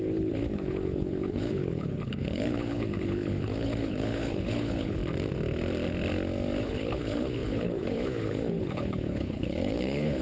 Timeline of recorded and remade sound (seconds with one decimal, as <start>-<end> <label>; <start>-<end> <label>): 0.0-5.0 remade; 5.0-6.6 recorded; 6.6-10.2 remade